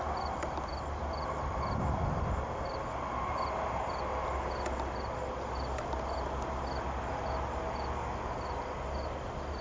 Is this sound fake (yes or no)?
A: no